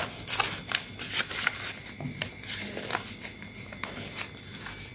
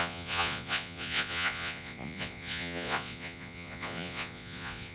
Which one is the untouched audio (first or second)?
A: first